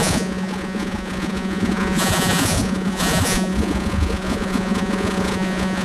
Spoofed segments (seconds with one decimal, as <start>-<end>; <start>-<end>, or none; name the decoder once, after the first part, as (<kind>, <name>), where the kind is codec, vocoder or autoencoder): 0.0-5.8 (vocoder, Vocos)